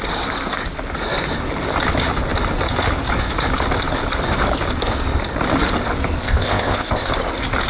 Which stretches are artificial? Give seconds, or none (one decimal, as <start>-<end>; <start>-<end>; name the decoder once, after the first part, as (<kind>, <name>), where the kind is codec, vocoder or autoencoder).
6.2-7.1 (codec, ZipCodec)